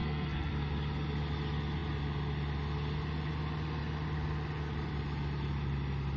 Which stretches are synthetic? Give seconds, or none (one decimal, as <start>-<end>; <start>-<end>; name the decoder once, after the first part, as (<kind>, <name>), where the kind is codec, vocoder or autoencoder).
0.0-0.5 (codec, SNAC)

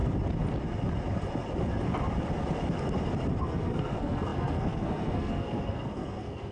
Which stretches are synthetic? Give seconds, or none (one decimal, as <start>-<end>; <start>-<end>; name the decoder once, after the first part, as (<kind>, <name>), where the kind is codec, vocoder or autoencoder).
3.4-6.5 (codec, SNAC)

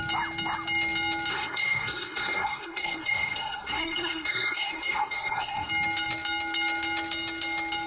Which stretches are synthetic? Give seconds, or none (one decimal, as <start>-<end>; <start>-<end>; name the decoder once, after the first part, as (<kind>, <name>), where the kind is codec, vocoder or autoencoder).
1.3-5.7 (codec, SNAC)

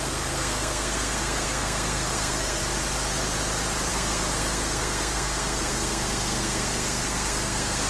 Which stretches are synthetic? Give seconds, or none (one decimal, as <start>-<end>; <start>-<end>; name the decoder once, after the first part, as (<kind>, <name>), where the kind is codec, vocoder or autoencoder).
0.0-2.6 (codec, SNAC); 3.9-7.9